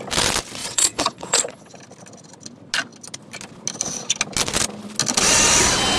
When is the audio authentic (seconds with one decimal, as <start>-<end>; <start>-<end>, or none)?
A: 0.0-0.6; 1.8-6.0